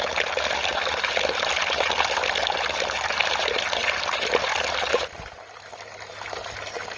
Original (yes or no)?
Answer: yes